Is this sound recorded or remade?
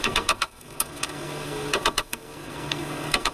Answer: remade